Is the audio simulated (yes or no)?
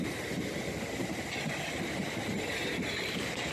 no